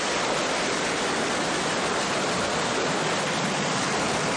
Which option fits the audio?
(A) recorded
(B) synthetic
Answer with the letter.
A